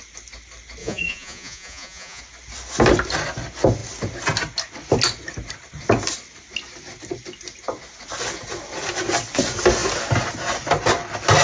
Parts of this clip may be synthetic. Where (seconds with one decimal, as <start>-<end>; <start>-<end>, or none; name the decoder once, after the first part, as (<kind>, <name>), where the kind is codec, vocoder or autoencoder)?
0.8-2.2 (vocoder, Vocos)